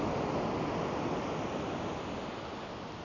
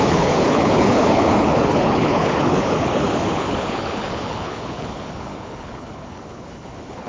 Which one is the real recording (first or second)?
first